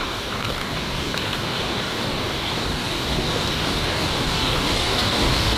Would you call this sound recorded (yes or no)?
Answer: no